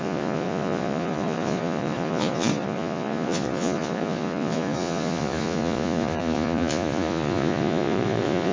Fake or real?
fake